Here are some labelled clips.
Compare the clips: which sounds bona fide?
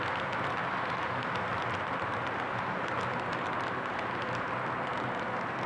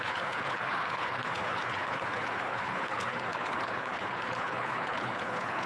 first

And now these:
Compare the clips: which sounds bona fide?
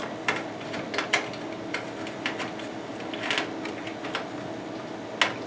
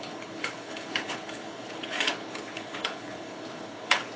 first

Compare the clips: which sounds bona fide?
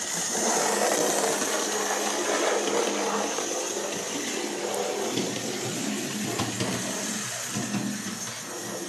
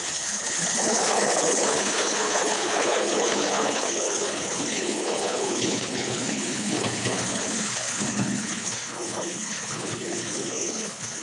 first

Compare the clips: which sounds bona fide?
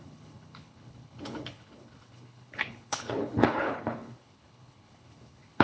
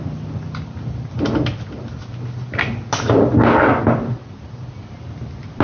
second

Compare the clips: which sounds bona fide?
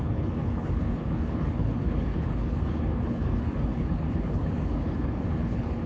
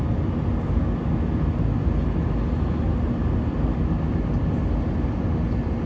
second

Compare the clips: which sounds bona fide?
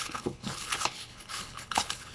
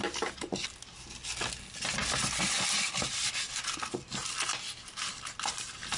second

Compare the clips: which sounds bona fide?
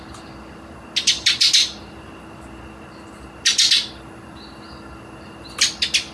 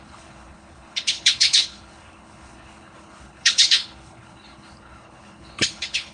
first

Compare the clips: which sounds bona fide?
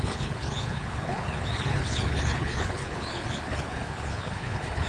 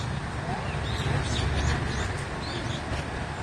second